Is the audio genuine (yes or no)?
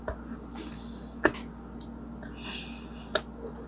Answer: yes